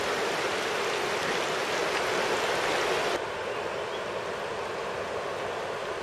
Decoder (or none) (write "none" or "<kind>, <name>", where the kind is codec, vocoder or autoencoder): none